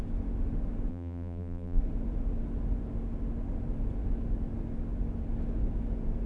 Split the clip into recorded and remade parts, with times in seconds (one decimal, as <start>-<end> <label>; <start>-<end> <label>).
0.0-0.9 recorded; 0.9-1.8 remade; 1.8-6.3 recorded